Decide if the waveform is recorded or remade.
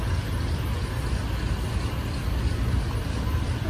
recorded